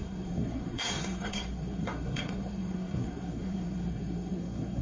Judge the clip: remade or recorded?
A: remade